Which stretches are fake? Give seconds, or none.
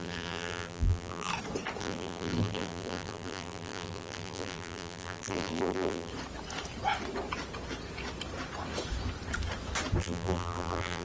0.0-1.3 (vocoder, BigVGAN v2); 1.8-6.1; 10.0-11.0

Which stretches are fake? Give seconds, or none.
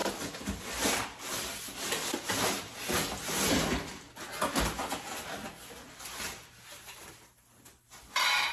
none